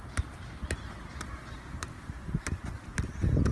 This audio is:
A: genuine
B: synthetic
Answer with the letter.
A